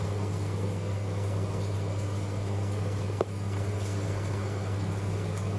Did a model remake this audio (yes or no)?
yes